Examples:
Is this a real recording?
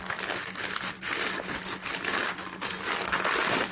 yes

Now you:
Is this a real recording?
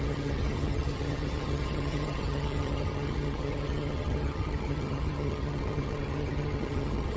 no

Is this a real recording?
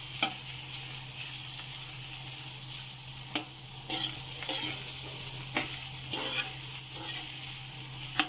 yes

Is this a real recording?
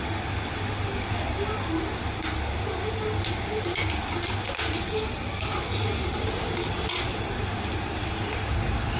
yes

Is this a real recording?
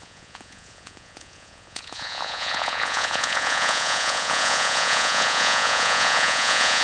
no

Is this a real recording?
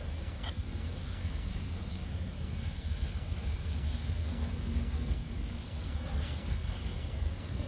no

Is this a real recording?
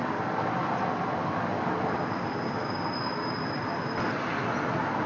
yes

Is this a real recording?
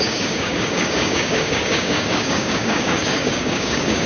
no